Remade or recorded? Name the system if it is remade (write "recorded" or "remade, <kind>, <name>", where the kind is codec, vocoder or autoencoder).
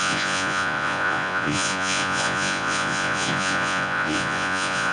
remade, vocoder, Vocos